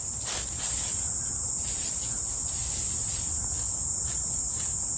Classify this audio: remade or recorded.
recorded